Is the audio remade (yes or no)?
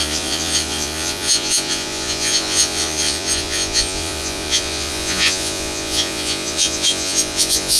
yes